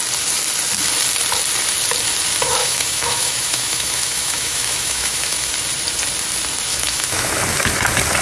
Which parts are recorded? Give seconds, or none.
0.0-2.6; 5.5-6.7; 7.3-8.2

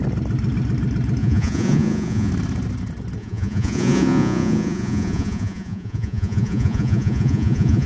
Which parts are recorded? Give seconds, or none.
0.0-1.2; 2.3-3.2

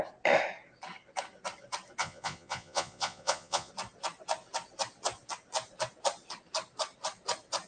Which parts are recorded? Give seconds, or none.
0.0-2.0; 3.7-7.7

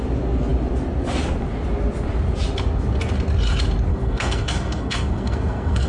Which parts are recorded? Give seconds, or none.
0.0-3.9

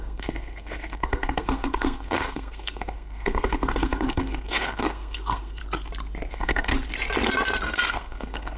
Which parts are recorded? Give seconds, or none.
5.6-6.3; 6.7-7.9

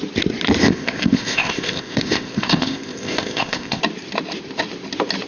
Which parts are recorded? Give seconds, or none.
0.0-0.6; 3.8-5.3